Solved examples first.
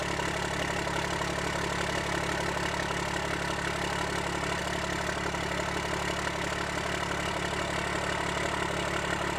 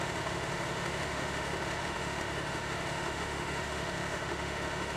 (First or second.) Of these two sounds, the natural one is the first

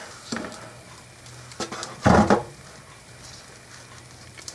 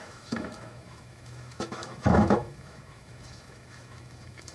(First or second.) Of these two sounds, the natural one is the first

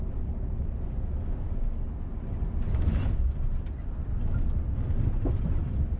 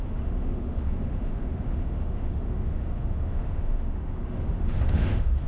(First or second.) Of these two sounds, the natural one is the first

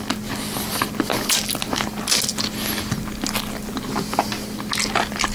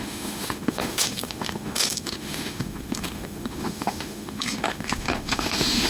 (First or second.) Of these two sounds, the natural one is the first